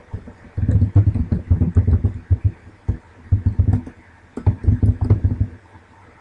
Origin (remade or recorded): recorded